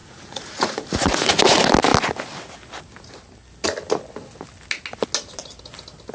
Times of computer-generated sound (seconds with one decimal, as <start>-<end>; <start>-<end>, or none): 0.0-1.4